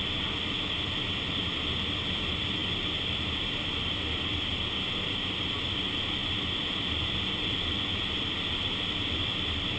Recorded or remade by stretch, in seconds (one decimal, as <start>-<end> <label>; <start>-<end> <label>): 0.0-9.8 recorded